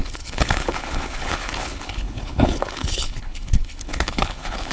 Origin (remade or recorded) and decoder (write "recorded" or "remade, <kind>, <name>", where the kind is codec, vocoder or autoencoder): remade, codec, HILCodec